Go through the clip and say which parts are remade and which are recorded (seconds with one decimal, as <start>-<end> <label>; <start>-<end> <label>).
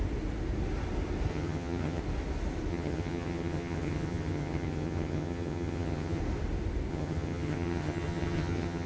0.0-1.3 recorded; 1.3-2.0 remade; 2.0-2.7 recorded; 2.7-6.2 remade; 6.2-6.9 recorded; 6.9-8.9 remade